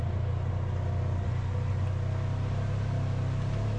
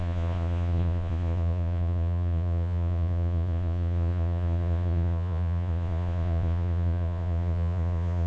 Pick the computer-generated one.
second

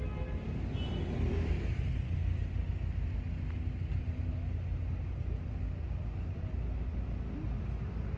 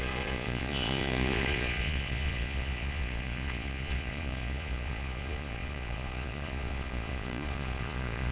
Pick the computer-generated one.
second